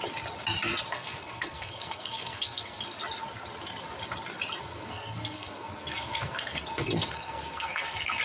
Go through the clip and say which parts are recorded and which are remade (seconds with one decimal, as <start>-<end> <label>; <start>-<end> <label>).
0.0-0.9 recorded; 0.9-2.8 remade; 2.8-4.6 recorded; 4.6-8.2 remade